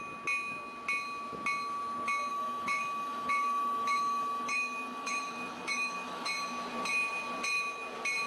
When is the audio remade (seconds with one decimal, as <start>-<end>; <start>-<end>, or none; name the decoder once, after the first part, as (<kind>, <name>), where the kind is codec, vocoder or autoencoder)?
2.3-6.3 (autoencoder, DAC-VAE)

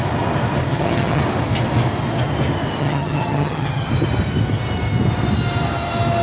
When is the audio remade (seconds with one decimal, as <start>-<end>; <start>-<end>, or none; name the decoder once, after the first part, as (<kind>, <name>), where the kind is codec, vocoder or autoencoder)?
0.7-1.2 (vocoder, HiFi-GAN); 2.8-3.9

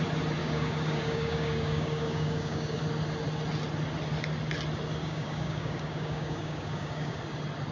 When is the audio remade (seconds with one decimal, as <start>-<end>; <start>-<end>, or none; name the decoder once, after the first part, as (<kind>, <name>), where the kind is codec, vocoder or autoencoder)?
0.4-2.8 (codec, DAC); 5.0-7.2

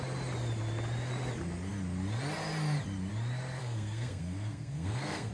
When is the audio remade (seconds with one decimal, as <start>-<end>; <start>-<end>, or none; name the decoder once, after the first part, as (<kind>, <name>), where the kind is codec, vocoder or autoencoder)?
3.6-5.3 (codec, SNAC)

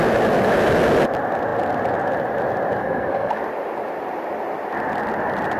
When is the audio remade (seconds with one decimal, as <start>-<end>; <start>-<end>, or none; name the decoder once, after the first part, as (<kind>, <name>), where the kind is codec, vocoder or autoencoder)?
2.8-3.4 (codec, SNAC)

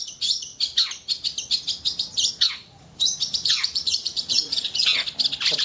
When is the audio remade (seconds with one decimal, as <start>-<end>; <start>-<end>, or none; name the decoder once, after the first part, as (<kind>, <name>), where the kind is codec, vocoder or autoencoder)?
0.0-0.5 (vocoder, Vocos); 2.3-5.0

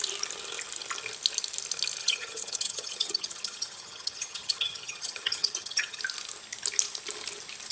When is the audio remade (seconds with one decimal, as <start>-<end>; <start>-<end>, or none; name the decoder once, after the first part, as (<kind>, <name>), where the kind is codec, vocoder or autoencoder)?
2.0-6.0 (vocoder, HiFi-GAN)